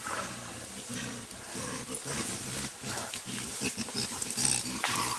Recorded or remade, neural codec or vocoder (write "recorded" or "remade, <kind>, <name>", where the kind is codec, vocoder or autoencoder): recorded